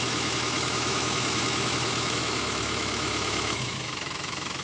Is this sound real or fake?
fake